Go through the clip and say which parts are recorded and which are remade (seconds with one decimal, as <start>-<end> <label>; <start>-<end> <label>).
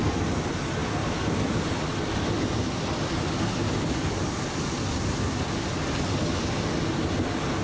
0.0-7.6 recorded